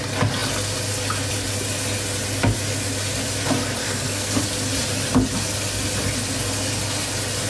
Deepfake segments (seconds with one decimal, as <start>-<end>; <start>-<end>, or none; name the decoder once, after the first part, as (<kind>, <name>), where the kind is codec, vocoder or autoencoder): 3.8-4.4 (codec, SNAC)